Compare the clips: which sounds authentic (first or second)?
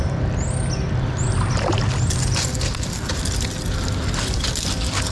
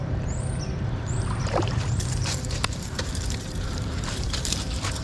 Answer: first